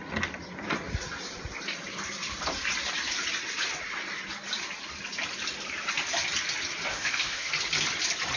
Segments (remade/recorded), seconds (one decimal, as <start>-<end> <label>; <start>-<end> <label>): 0.0-6.9 recorded; 6.9-7.5 remade; 7.5-8.4 recorded